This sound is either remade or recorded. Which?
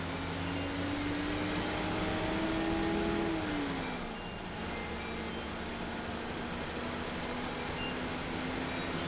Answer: recorded